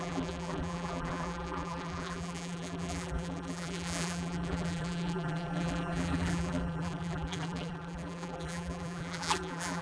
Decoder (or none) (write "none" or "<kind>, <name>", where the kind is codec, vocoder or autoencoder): vocoder, BigVGAN v2